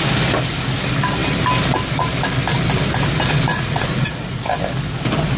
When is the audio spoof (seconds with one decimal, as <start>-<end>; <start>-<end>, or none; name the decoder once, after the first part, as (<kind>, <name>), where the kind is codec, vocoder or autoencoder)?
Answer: 3.5-4.5 (vocoder, Vocos)